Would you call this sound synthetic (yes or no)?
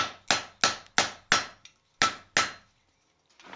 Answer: no